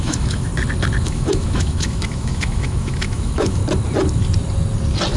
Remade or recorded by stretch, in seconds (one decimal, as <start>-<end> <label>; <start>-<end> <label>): 0.0-0.5 remade; 0.5-1.0 recorded; 1.0-3.6 remade; 3.6-5.2 recorded